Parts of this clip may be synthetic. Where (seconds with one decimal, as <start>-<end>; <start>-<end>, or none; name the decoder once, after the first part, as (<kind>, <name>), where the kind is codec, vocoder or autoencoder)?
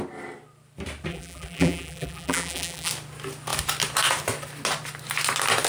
1.1-2.9 (vocoder, BigVGAN v2)